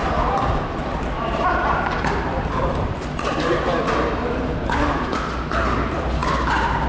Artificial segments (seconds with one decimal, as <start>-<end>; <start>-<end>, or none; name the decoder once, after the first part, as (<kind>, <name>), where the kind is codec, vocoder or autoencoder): 0.0-3.3 (vocoder, BigVGAN v2); 4.9-6.2